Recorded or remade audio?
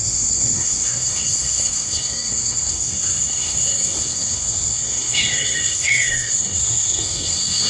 remade